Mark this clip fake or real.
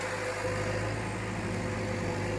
real